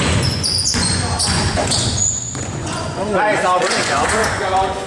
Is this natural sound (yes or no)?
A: no